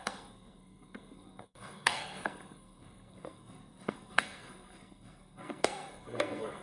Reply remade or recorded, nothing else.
remade